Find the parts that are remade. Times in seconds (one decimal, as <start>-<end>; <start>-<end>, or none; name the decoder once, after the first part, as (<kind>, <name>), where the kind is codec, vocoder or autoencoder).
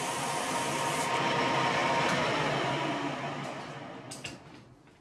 none